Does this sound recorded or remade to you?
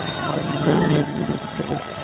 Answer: remade